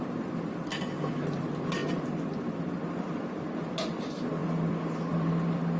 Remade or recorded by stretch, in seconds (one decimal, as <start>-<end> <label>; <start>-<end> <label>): 0.0-5.8 recorded